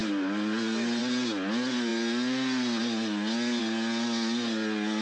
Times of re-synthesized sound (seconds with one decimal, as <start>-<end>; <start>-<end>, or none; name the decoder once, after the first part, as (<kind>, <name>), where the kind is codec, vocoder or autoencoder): none